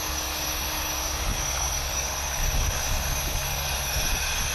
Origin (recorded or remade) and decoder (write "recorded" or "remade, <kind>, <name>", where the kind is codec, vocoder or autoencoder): remade, codec, DAC